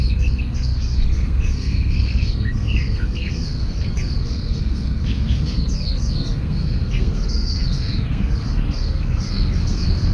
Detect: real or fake fake